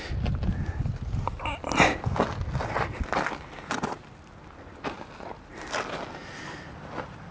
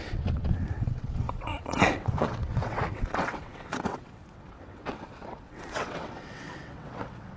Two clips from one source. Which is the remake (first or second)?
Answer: second